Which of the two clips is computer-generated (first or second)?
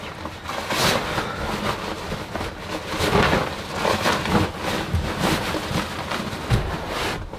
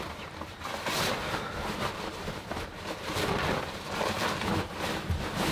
second